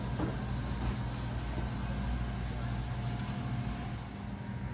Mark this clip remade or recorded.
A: recorded